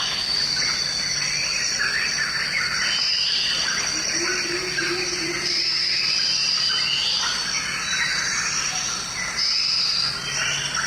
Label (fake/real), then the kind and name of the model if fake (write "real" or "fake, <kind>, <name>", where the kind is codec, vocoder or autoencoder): real